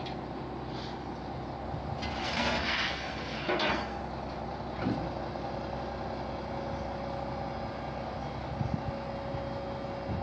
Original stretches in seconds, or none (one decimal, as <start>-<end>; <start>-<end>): 0.0-2.2; 4.0-10.2